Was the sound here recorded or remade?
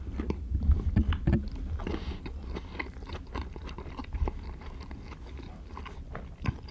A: recorded